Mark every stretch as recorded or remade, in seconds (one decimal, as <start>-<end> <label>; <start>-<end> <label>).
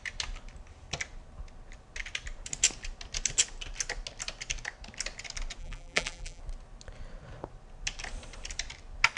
0.0-5.6 recorded; 5.6-6.4 remade; 6.4-9.2 recorded